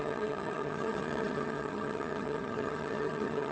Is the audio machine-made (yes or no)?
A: yes